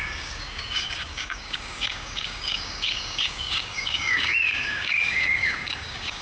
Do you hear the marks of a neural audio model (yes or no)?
yes